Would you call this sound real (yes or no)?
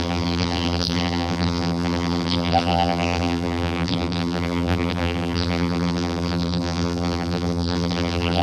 no